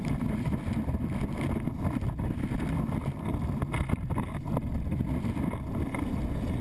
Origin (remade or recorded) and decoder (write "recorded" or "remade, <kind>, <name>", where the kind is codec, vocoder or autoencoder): recorded